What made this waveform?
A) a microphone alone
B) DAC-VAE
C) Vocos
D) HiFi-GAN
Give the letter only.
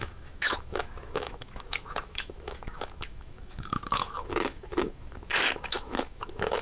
B